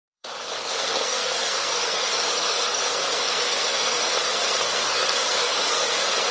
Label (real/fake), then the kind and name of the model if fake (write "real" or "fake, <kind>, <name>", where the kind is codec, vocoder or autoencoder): fake, codec, SNAC